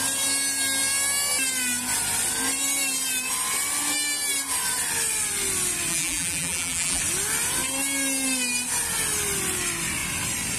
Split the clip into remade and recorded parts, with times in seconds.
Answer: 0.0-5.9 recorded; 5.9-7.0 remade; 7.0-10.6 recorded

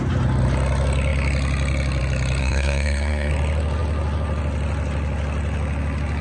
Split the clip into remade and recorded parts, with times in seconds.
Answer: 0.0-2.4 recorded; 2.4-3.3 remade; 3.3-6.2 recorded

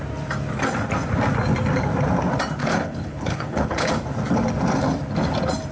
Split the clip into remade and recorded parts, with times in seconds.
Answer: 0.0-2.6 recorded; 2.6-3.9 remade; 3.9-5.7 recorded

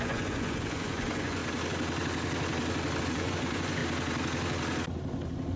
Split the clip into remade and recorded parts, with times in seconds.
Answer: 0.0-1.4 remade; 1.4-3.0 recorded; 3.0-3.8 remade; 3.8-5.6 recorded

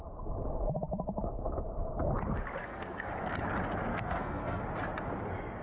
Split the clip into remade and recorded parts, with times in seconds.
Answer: 0.0-2.6 recorded; 2.6-3.1 remade; 3.1-3.9 recorded; 3.9-4.6 remade; 4.6-5.6 recorded

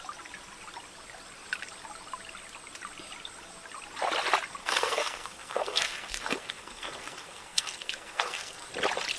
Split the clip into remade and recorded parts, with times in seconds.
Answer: 0.0-4.6 recorded; 4.6-8.7 remade; 8.7-9.2 recorded

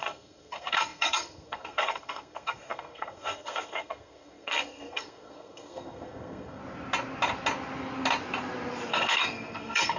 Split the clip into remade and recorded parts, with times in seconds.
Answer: 0.0-6.6 remade; 6.6-8.9 recorded; 8.9-10.0 remade

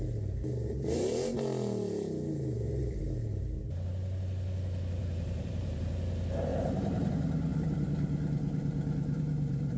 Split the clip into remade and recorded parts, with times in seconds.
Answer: 0.0-2.3 recorded; 2.3-3.0 remade; 3.0-5.0 recorded; 5.0-5.9 remade; 5.9-6.5 recorded; 6.5-7.1 remade; 7.1-7.5 recorded; 7.5-9.8 remade